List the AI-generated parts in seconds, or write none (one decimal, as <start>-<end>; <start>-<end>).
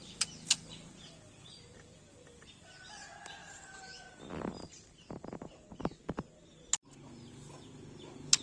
3.4-5.4